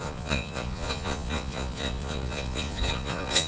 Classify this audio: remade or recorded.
remade